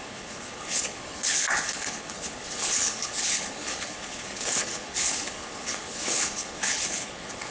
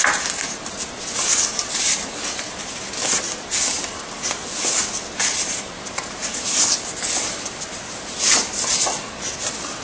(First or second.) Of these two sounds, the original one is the second